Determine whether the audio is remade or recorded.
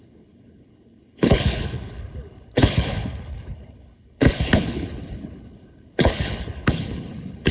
remade